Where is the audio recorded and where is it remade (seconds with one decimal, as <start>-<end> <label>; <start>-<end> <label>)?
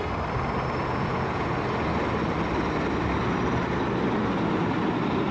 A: 0.0-0.8 recorded; 0.8-1.5 remade; 1.5-5.3 recorded